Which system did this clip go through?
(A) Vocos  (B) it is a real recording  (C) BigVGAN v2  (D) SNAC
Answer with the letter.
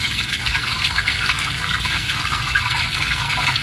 D